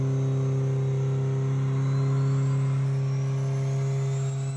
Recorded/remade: recorded